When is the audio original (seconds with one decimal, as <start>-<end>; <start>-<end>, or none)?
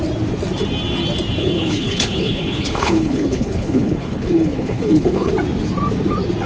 0.0-1.4; 5.3-6.5